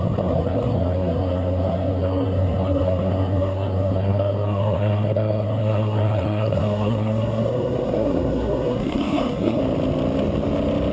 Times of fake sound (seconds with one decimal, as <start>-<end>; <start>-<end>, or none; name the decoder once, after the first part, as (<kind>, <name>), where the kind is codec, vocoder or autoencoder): 0.0-9.6 (codec, SNAC)